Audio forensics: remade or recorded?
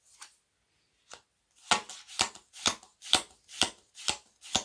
recorded